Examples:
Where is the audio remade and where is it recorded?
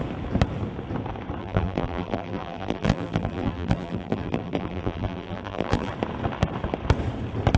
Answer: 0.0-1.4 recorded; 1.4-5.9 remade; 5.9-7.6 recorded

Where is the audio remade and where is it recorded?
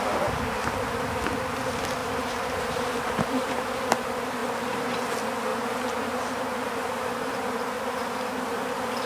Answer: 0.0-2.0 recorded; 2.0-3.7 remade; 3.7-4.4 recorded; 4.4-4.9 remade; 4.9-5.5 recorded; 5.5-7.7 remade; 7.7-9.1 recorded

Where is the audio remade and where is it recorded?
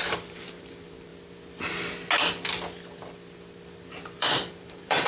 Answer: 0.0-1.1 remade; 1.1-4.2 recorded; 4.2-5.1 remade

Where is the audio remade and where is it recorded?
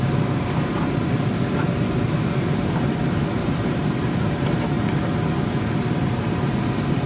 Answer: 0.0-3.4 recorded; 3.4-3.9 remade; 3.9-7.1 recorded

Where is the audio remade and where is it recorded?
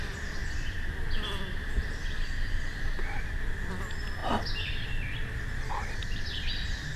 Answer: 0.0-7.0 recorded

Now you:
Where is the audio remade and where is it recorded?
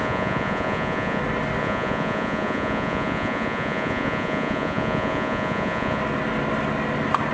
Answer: 0.0-1.2 remade; 1.2-1.6 recorded; 1.6-6.0 remade; 6.0-7.3 recorded